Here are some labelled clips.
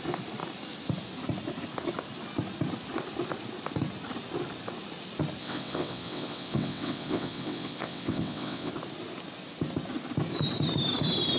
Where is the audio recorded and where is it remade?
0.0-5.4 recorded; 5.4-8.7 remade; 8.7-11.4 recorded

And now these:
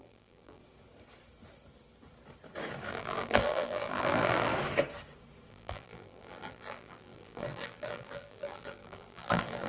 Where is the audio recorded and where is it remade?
0.0-0.6 remade; 0.6-2.9 recorded; 2.9-4.5 remade; 4.5-5.5 recorded; 5.5-9.7 remade

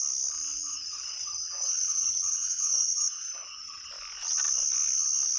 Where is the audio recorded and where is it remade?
0.0-0.7 recorded; 0.7-3.9 remade; 3.9-5.4 recorded

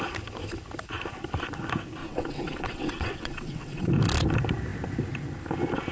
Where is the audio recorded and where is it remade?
0.0-2.0 recorded; 2.0-3.9 remade; 3.9-5.9 recorded

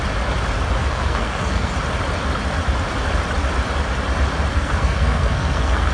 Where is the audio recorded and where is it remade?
0.0-0.8 recorded; 0.8-1.7 remade; 1.7-4.5 recorded; 4.5-5.9 remade

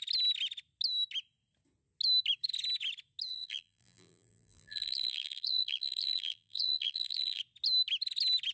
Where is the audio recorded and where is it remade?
0.0-3.3 recorded; 3.3-7.4 remade; 7.4-8.5 recorded

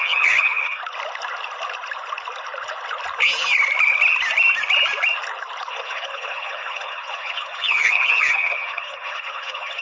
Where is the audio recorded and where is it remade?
0.0-0.8 remade; 0.8-5.7 recorded; 5.7-9.8 remade

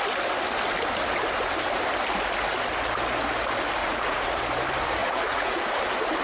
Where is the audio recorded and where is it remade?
0.0-3.8 recorded; 3.8-4.4 remade; 4.4-5.0 recorded; 5.0-5.6 remade; 5.6-6.2 recorded